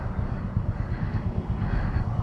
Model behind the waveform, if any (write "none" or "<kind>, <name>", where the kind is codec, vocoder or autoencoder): codec, DAC